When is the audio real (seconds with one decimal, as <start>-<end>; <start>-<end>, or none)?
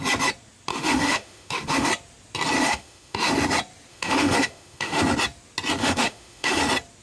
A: 0.0-0.7; 1.9-2.6; 3.3-3.9; 5.0-5.8; 6.6-7.0